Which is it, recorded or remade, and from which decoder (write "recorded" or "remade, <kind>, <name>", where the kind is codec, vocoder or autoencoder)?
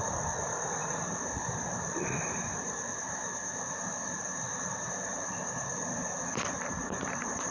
remade, vocoder, BigVGAN v2